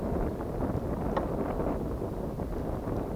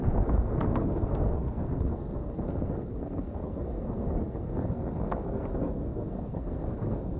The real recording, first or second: first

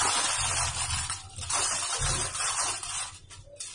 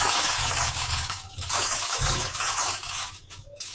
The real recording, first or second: first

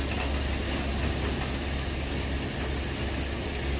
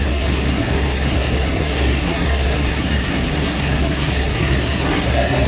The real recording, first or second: first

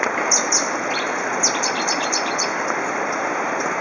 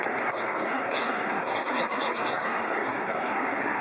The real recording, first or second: first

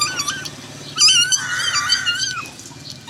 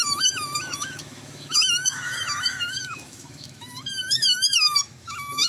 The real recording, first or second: first